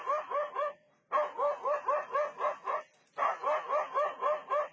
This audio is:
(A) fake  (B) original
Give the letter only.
B